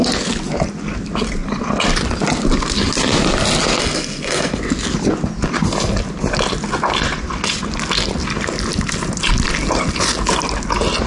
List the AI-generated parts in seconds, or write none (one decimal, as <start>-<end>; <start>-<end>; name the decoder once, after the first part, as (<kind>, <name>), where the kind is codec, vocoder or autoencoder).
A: 3.8-4.6 (codec, SNAC)